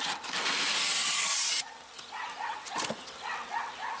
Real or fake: real